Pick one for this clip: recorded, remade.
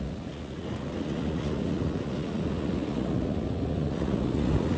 remade